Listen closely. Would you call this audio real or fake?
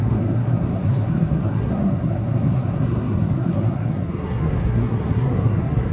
fake